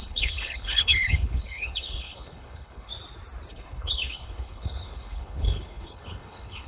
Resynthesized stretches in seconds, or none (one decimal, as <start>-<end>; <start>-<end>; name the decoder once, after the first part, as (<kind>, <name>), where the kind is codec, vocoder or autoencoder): 0.0-2.9 (codec, HILCodec); 3.5-6.7

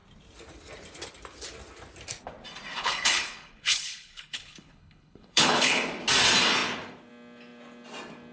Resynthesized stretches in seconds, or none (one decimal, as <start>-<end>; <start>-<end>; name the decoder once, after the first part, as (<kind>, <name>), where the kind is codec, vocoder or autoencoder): 2.7-5.8 (codec, HILCodec)

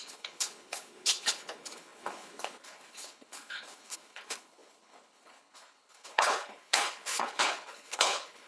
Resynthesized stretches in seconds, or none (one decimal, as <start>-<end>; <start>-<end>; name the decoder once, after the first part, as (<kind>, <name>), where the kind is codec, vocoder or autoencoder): 0.0-8.5 (codec, HILCodec)

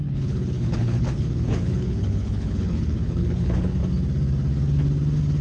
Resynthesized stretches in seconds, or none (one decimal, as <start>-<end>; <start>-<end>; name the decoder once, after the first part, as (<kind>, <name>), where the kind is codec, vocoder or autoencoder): 0.0-3.8 (codec, HILCodec)

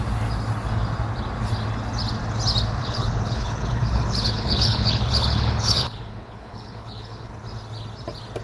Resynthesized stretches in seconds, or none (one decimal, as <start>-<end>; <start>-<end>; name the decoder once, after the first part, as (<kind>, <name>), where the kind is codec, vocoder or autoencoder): 2.8-7.3 (codec, HILCodec)

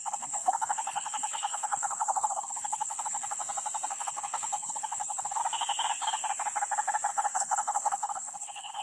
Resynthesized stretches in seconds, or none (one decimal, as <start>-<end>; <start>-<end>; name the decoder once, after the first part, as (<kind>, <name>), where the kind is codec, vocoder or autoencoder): 0.0-3.4 (codec, HILCodec); 3.9-5.4; 7.1-8.8